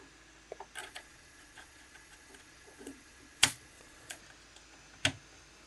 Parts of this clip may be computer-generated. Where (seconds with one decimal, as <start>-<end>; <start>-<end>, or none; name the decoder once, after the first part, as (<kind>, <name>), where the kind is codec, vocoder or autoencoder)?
0.8-4.2 (vocoder, Vocos)